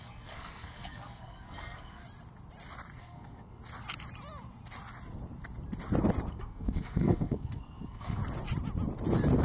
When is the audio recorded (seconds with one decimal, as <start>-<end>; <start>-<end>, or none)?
2.0-3.0; 3.6-6.3; 8.2-9.4